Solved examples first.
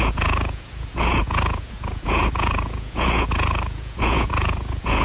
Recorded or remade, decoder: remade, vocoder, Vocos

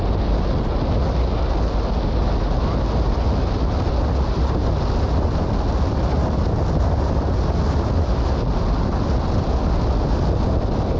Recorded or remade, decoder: recorded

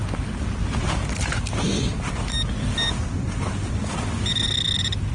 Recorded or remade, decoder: recorded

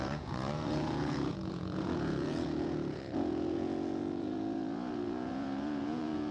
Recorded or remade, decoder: remade, vocoder, Vocos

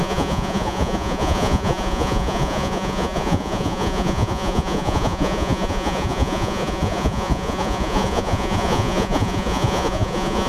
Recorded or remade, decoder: remade, vocoder, Vocos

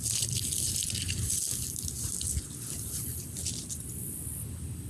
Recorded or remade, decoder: recorded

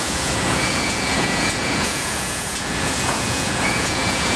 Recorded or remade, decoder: remade, vocoder, Vocos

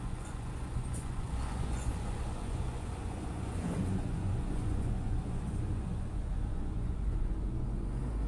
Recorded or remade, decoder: remade, vocoder, Vocos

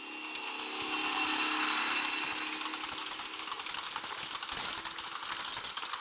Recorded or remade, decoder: recorded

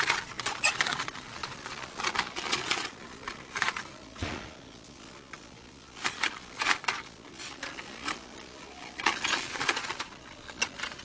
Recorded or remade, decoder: remade, vocoder, Vocos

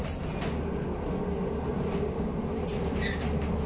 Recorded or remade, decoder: recorded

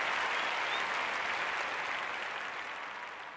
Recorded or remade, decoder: recorded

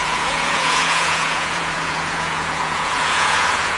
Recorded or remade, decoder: remade, vocoder, Vocos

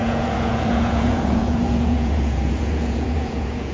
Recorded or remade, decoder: remade, vocoder, Vocos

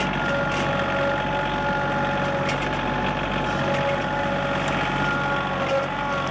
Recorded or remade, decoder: recorded